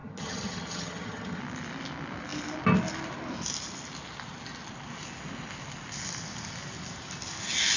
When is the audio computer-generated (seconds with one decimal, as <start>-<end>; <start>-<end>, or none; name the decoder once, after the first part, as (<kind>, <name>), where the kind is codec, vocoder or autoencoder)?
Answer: 0.0-1.4 (vocoder, HiFi-GAN)